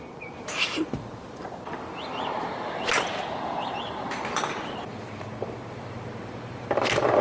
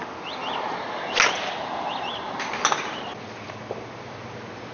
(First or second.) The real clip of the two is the second